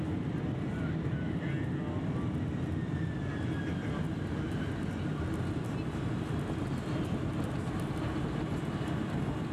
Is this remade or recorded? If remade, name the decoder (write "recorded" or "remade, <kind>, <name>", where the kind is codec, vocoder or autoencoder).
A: recorded